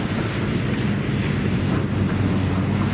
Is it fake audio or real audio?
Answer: real